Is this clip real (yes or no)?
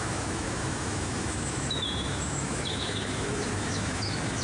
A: no